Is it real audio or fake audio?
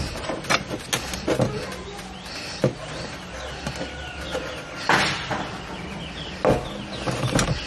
real